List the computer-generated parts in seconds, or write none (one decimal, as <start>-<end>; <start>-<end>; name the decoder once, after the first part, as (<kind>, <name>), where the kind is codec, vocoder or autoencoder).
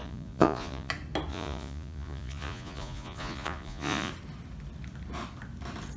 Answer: 0.0-0.9 (vocoder, Vocos); 1.3-4.1